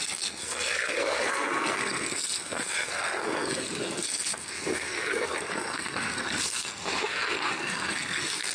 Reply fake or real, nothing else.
fake